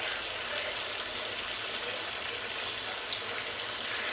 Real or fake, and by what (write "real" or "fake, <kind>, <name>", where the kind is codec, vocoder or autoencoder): real